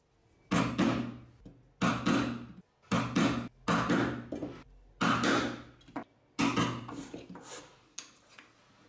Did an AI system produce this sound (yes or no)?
no